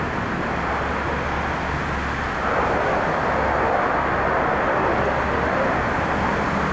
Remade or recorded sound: recorded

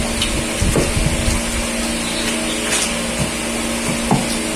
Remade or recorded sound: recorded